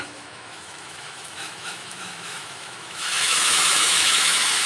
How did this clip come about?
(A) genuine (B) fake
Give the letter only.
B